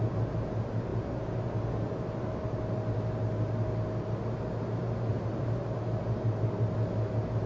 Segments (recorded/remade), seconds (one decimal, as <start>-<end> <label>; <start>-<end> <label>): 0.0-5.1 recorded; 5.1-5.6 remade; 5.6-7.5 recorded